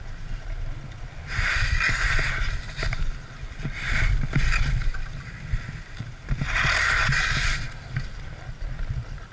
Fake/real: real